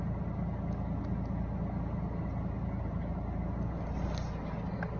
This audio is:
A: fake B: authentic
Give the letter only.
B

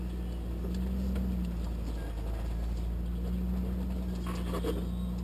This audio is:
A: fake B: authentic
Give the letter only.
B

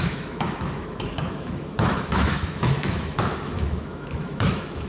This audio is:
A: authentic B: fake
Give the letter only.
B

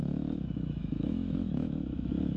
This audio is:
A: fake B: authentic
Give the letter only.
A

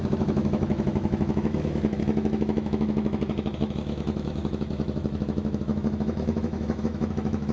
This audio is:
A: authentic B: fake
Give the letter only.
B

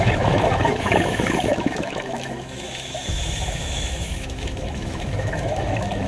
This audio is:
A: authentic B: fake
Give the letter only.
B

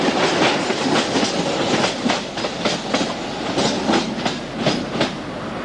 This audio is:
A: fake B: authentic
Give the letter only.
B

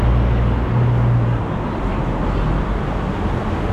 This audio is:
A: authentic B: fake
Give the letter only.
A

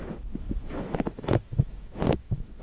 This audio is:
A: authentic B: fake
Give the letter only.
B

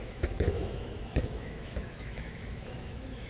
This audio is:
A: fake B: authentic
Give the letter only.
A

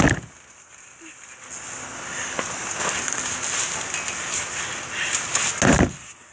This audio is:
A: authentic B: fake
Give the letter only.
A